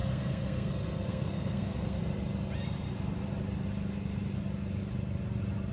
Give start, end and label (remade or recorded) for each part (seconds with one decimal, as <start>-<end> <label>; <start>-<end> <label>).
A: 0.0-0.7 remade; 0.7-1.1 recorded; 1.1-2.0 remade; 2.0-5.7 recorded